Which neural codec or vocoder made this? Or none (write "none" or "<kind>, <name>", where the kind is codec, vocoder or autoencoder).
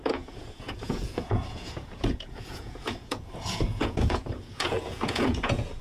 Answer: vocoder, Vocos